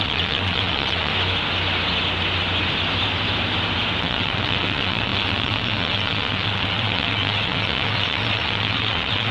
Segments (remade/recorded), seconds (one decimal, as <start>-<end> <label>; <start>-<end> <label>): 0.0-1.1 remade; 1.1-4.0 recorded; 4.0-9.3 remade